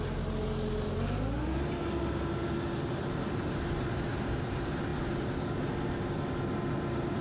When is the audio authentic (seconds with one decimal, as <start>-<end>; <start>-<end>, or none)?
0.0-7.2